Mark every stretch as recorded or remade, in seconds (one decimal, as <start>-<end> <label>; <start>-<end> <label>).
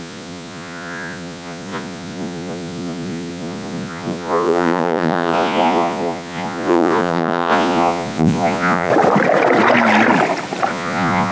0.0-8.9 remade; 8.9-10.7 recorded; 10.7-11.3 remade